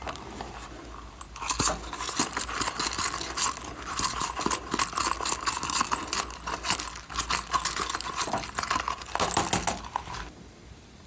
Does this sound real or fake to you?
real